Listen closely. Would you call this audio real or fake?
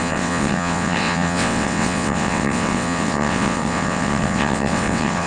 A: fake